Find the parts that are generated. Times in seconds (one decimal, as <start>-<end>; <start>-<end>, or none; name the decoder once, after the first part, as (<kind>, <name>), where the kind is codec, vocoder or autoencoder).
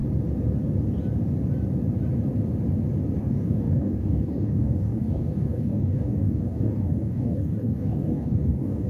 3.2-8.9 (codec, DAC)